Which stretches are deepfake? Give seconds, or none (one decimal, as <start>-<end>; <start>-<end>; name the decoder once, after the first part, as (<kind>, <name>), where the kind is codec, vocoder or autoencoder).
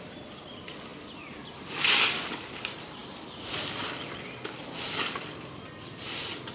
none